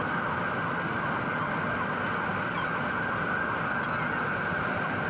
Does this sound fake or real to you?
real